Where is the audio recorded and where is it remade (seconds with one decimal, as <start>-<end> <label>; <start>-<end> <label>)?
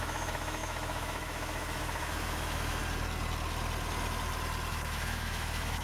0.0-2.8 remade; 2.8-4.7 recorded; 4.7-5.8 remade